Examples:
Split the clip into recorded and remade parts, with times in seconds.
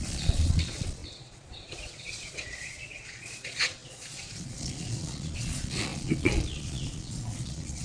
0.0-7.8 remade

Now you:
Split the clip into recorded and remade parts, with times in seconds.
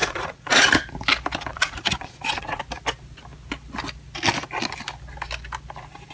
0.0-0.7 remade; 0.7-1.5 recorded; 1.5-2.6 remade; 2.6-6.1 recorded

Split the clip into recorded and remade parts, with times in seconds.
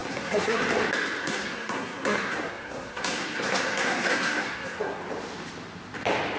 0.0-0.6 remade; 0.6-1.2 recorded; 1.2-5.0 remade; 5.0-6.4 recorded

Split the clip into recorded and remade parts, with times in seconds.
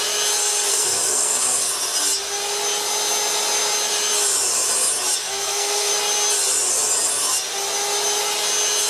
0.0-0.7 recorded; 0.7-1.7 remade; 1.7-5.2 recorded; 5.2-5.9 remade; 5.9-8.9 recorded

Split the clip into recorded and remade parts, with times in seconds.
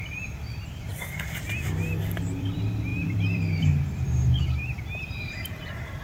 0.0-6.0 remade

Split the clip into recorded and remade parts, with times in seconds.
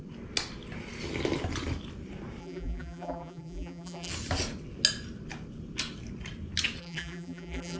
0.0-2.4 recorded; 2.4-4.1 remade; 4.1-6.8 recorded; 6.8-7.8 remade